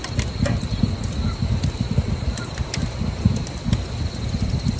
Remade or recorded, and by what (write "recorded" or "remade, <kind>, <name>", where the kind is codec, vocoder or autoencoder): recorded